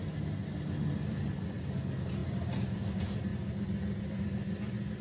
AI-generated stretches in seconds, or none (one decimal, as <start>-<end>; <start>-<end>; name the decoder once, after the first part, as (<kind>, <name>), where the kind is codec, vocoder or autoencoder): none